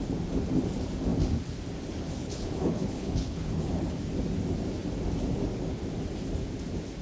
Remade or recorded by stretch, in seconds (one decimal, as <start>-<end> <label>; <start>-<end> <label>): 0.0-2.2 recorded; 2.2-3.7 remade; 3.7-7.0 recorded